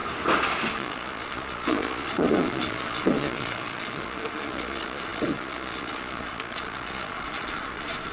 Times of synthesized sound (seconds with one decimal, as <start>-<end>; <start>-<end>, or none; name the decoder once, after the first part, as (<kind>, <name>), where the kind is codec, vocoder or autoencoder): 0.7-8.1 (vocoder, Vocos)